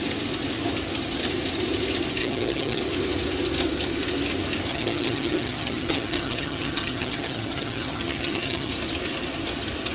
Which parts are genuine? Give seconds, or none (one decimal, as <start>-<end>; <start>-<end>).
0.0-2.2; 2.8-4.7; 8.7-9.9